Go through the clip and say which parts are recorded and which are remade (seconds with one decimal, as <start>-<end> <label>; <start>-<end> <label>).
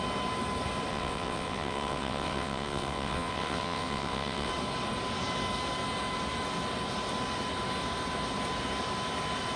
0.0-0.9 recorded; 0.9-4.5 remade; 4.5-9.6 recorded